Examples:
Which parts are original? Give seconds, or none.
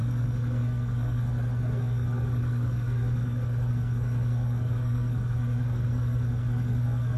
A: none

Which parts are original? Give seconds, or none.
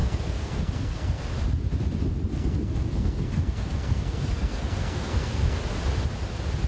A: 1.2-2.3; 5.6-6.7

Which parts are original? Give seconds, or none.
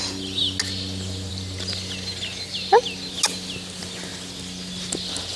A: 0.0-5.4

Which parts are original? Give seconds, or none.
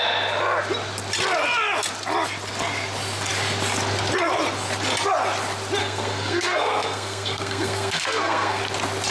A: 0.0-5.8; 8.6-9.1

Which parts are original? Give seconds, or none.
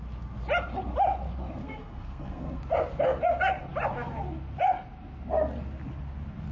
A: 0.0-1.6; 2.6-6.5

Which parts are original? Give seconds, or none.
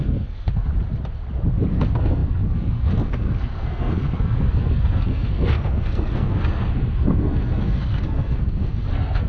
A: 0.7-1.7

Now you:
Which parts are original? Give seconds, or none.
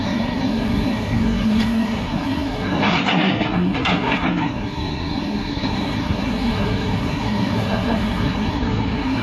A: none